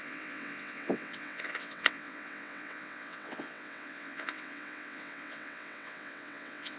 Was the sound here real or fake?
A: fake